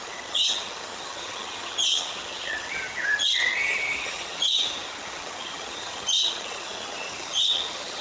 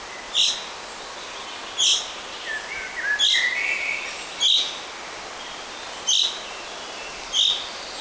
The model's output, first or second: first